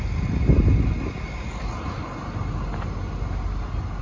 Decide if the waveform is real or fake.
real